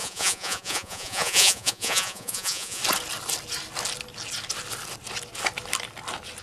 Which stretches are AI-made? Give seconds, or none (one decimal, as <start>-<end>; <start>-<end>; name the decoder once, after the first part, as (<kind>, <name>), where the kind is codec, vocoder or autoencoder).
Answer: 0.0-2.8 (vocoder, Vocos)